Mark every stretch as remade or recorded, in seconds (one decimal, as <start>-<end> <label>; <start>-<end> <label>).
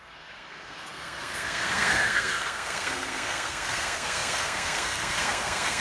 0.0-5.8 remade